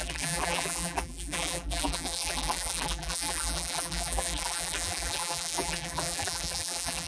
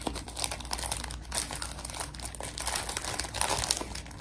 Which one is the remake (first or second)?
first